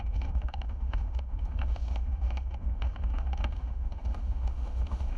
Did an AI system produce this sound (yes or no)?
yes